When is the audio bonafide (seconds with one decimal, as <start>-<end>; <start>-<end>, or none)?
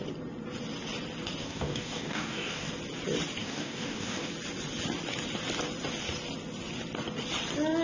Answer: 0.0-1.4; 2.7-3.4; 4.3-7.8